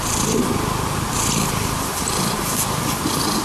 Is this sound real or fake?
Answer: fake